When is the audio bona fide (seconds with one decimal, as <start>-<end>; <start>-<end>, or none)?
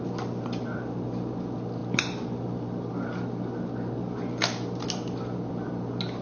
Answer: 0.0-6.2